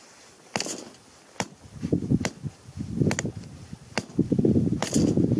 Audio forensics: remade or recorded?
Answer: recorded